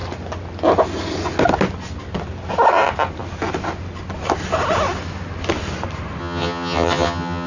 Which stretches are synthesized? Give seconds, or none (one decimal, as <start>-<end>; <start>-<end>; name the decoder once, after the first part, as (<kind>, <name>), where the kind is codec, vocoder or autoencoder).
6.2-7.5 (vocoder, HiFi-GAN)